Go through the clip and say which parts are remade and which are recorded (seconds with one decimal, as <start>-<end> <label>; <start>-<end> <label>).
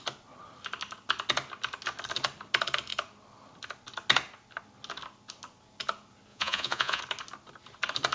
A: 0.0-6.3 recorded; 6.3-7.0 remade; 7.0-8.1 recorded